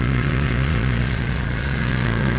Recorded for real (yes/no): no